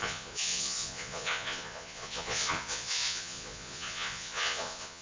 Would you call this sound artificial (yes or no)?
yes